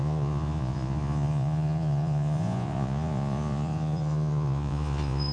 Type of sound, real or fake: fake